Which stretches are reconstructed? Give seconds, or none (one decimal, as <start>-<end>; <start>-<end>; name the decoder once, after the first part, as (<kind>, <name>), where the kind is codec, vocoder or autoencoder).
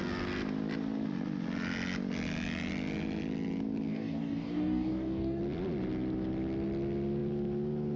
3.9-5.4 (codec, DAC)